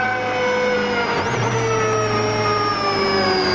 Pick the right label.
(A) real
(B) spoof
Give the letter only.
A